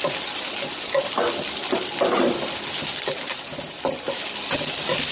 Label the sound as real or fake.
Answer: real